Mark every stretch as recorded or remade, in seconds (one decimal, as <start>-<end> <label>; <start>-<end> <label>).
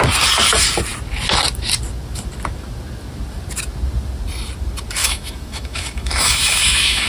0.0-5.0 recorded; 5.0-7.1 remade